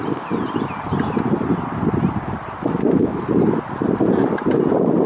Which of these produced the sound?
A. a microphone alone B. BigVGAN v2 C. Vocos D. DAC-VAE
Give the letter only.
A